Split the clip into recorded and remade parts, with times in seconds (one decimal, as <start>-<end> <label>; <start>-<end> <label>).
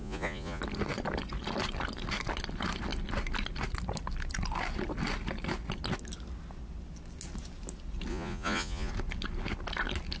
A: 0.0-0.6 remade; 0.6-8.1 recorded; 8.1-8.9 remade; 8.9-10.2 recorded